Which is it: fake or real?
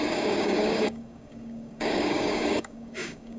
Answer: fake